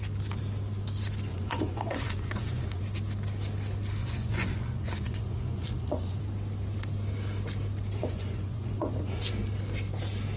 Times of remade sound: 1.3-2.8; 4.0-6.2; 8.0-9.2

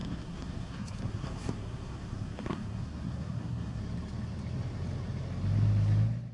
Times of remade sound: 0.0-3.8

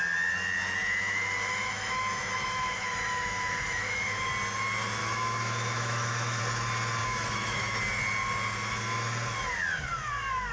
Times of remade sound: 0.8-4.3; 5.0-6.4; 7.0-7.8

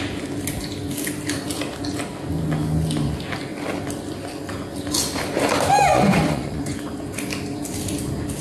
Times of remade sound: 5.9-6.8

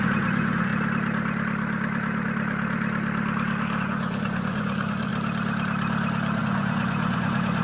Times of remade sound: 0.0-0.7; 3.8-5.1; 6.4-7.6

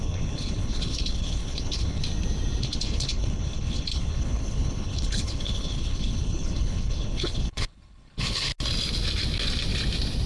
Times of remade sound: 0.0-2.0; 2.6-8.5

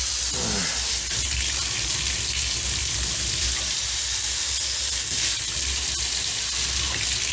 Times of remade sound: 2.8-3.8

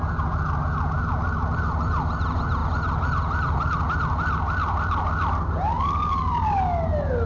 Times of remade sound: none